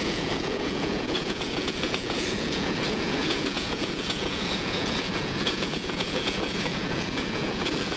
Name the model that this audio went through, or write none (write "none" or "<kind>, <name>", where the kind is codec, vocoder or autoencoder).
vocoder, Vocos